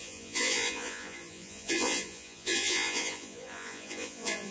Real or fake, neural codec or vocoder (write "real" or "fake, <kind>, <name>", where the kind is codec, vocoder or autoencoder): fake, vocoder, Vocos